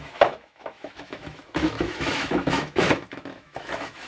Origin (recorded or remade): remade